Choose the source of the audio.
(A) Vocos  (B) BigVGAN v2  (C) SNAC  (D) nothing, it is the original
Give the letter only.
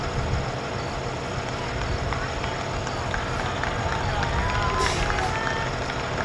D